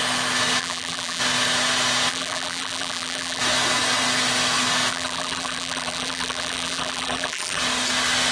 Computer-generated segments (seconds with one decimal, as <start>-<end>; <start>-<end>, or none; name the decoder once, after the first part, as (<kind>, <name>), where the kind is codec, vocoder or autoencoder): 0.6-1.2 (vocoder, BigVGAN v2); 2.1-3.4; 4.9-7.6